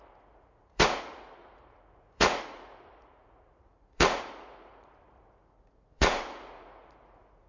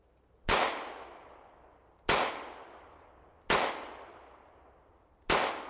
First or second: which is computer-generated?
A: first